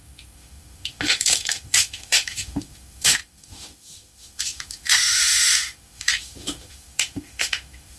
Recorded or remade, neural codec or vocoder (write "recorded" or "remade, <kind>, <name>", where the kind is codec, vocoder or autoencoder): remade, autoencoder, DAC-VAE